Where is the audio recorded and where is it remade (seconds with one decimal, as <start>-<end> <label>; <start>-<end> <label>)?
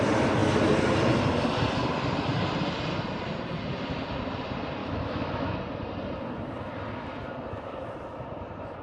0.0-4.8 recorded; 4.8-5.6 remade; 5.6-8.8 recorded